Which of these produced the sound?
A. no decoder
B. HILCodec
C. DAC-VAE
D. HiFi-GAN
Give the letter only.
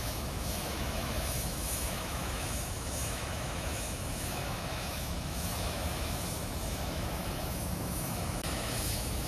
C